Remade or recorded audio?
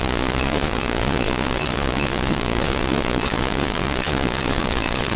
remade